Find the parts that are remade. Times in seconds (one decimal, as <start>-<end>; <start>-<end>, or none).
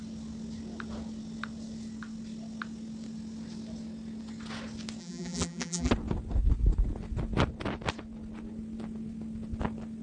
5.0-5.9